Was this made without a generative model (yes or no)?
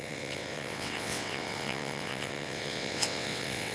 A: no